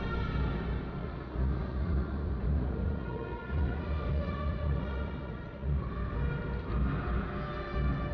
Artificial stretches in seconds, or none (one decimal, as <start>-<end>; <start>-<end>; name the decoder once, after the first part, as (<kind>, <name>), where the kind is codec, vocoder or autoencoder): 1.0-5.9 (vocoder, Vocos)